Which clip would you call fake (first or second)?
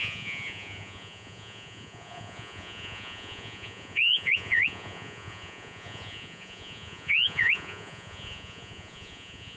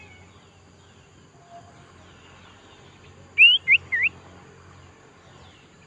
first